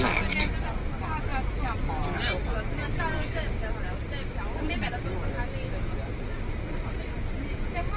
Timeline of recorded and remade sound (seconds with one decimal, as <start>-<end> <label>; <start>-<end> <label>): 0.0-8.0 recorded